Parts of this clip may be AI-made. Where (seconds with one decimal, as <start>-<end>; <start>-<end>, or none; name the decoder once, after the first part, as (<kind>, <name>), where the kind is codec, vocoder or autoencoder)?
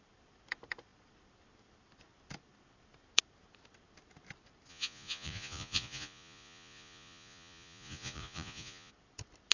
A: 4.7-8.9 (vocoder, Vocos)